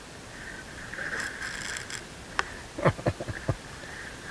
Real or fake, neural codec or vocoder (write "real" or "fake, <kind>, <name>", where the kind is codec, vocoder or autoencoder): real